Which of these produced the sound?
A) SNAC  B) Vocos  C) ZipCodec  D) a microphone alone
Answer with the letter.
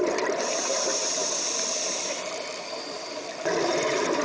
D